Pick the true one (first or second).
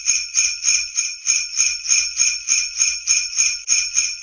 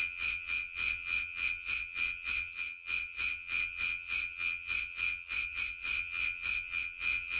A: first